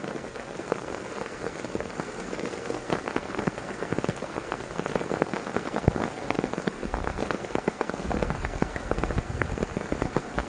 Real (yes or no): no